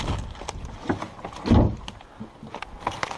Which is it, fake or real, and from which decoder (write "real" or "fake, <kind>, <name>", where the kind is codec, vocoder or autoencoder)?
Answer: real